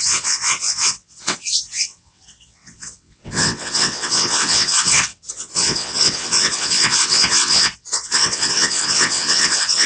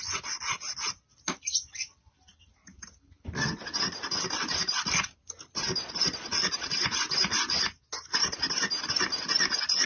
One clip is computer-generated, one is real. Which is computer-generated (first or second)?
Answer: first